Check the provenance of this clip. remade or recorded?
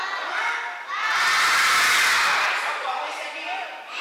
recorded